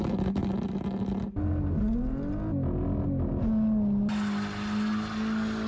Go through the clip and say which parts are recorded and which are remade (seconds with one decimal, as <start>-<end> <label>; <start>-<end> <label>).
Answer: 0.0-5.7 recorded